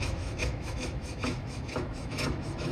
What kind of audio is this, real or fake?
fake